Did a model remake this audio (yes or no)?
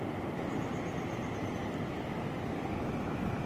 no